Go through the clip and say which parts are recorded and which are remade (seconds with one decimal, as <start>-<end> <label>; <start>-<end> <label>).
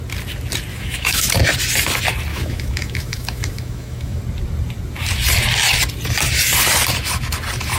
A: 0.0-0.7 recorded; 0.7-1.3 remade; 1.3-2.3 recorded; 2.3-4.2 remade; 4.2-7.8 recorded